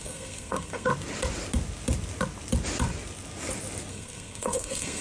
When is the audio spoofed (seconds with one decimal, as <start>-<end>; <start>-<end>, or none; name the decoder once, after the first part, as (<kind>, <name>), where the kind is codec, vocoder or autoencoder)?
0.0-0.9 (codec, SNAC); 3.9-5.0